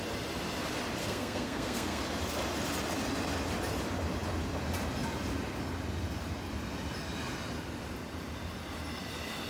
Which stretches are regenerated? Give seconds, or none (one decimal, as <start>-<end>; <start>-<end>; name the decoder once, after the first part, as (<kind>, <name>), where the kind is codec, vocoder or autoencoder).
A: 1.0-2.0 (codec, SNAC)